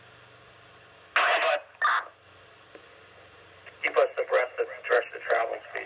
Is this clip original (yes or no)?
yes